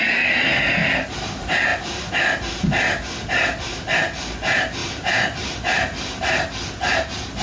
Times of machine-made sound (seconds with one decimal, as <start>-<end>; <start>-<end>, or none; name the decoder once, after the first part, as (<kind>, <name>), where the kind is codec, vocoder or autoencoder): 4.8-6.2 (vocoder, BigVGAN v2)

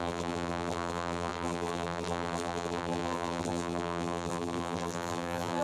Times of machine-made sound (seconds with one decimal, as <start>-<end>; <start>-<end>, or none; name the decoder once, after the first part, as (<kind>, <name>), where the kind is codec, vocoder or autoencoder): 0.0-5.6 (vocoder, BigVGAN v2)

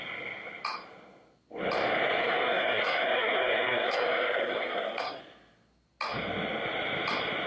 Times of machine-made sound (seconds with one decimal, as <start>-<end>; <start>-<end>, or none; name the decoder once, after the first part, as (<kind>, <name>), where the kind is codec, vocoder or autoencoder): 2.2-5.2 (codec, SNAC)

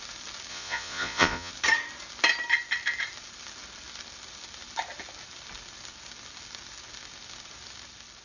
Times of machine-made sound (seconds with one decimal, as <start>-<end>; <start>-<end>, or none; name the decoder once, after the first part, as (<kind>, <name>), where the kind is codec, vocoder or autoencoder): 0.5-1.5 (vocoder, Vocos)

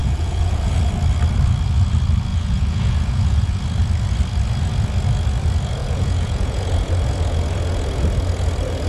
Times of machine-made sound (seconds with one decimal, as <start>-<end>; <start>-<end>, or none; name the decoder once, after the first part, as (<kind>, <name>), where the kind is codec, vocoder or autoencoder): 0.0-0.9 (vocoder, Vocos); 2.3-3.6; 5.8-6.6

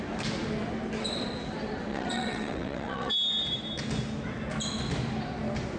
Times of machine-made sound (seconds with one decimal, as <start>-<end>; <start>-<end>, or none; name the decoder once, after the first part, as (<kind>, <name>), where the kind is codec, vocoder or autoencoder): 1.9-3.1 (vocoder, WaveNeXt)

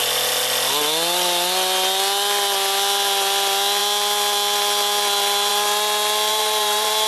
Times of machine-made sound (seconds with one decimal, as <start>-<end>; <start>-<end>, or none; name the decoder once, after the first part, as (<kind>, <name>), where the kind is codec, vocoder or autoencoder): 6.3-7.1 (vocoder, BigVGAN v2)

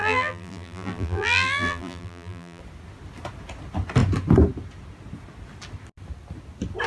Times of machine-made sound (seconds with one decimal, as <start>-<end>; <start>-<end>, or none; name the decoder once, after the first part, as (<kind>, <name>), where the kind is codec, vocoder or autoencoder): 0.0-2.6 (vocoder, BigVGAN v2)